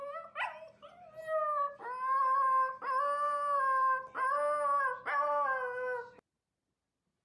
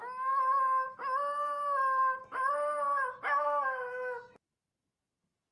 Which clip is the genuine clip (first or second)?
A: first